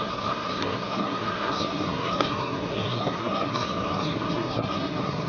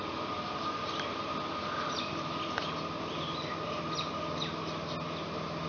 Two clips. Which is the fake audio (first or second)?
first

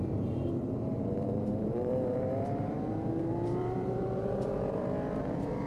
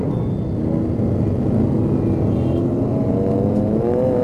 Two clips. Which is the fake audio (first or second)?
first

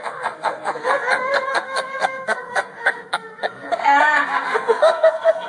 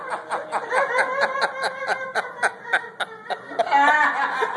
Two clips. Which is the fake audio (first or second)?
first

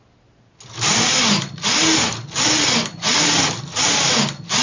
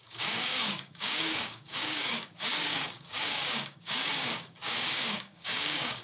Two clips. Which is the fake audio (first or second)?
second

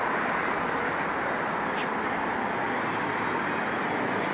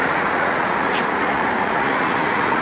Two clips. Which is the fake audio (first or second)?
second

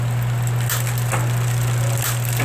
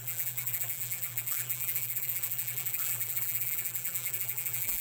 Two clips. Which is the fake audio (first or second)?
second